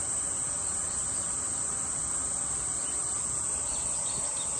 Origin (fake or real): real